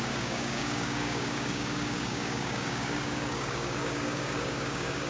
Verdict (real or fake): fake